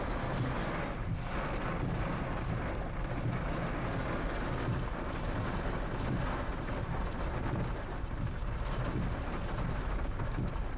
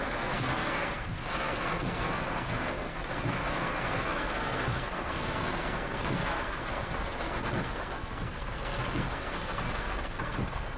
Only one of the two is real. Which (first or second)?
first